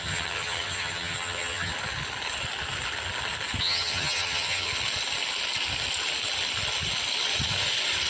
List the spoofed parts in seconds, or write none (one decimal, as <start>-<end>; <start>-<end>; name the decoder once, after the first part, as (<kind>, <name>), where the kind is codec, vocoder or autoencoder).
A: 0.0-1.7 (vocoder, HiFi-GAN); 3.6-4.7

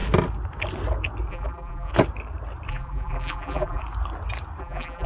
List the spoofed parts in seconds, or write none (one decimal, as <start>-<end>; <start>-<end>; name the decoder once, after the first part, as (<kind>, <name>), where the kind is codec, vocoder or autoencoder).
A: 1.3-1.9 (vocoder, BigVGAN v2); 2.7-3.8; 4.6-5.1

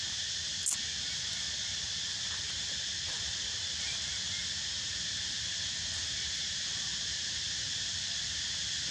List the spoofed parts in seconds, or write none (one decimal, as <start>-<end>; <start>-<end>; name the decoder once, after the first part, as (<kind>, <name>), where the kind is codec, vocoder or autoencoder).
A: none

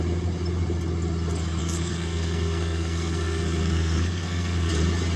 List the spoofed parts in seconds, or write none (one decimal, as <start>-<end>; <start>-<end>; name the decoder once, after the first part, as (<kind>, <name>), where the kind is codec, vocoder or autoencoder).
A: 1.6-4.7 (codec, SNAC)

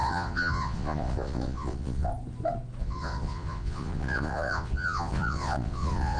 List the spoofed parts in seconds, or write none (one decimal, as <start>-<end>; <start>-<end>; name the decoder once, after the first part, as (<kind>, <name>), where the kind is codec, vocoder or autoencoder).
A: 0.0-2.1 (vocoder, Vocos); 2.8-6.2